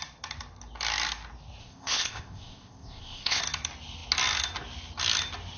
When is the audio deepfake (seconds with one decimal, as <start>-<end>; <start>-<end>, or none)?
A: 1.6-3.4